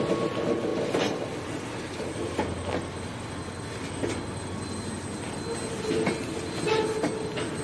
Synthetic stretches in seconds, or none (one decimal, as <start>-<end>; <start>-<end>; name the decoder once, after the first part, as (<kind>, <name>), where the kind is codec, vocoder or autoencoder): none